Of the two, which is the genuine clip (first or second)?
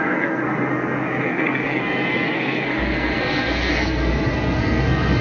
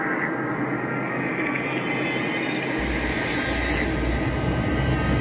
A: second